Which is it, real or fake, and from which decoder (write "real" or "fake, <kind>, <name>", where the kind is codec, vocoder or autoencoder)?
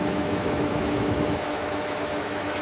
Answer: fake, autoencoder, DAC-VAE